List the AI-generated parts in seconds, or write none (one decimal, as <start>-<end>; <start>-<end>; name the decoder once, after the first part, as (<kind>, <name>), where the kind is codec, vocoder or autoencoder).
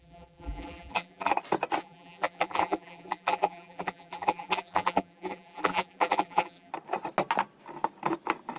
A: 0.0-1.3 (vocoder, BigVGAN v2); 1.8-6.7